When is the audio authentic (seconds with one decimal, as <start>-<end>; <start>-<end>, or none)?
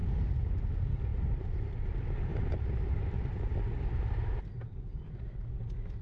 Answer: 0.5-1.1; 1.9-2.3; 4.4-6.0